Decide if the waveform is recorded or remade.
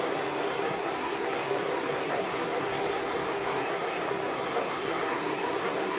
remade